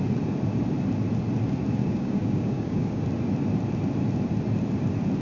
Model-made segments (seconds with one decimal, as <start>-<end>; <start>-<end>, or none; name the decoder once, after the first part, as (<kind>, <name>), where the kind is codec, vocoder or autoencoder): 1.8-3.0 (codec, DAC)